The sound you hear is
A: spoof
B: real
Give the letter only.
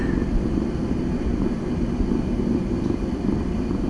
B